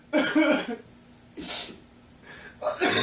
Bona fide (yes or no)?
yes